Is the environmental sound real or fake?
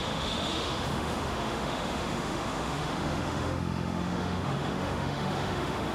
fake